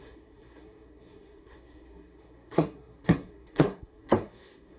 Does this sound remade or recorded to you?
remade